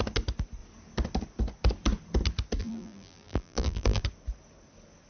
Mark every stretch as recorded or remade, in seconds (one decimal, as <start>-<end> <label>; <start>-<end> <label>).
0.0-2.6 recorded; 2.6-4.0 remade; 4.0-5.1 recorded